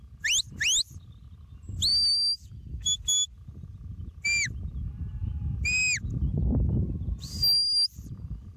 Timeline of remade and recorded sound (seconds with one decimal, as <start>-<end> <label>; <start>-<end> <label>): 0.0-8.6 recorded